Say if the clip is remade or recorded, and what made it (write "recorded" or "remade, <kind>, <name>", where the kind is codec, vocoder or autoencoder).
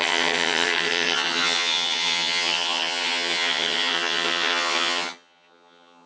remade, vocoder, HiFi-GAN